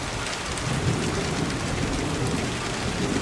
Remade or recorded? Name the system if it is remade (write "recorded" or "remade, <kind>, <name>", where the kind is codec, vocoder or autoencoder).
recorded